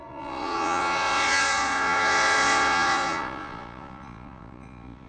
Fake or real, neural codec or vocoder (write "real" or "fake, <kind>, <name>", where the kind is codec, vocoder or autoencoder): fake, vocoder, Vocos